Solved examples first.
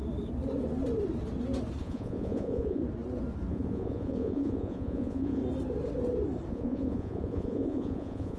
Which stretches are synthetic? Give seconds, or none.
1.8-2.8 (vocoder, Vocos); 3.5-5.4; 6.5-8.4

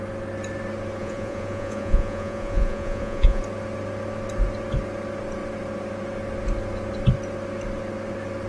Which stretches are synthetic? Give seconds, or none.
1.0-3.4 (vocoder, Vocos)

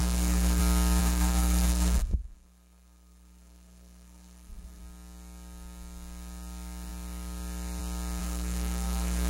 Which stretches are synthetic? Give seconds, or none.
0.0-0.6 (codec, SNAC); 1.0-4.8; 8.2-9.3

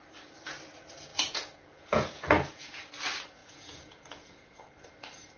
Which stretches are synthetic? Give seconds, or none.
1.1-2.9 (vocoder, Vocos); 3.4-4.7

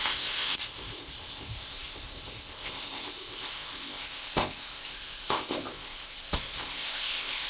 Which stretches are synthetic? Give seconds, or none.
0.0-7.5 (codec, ZipCodec)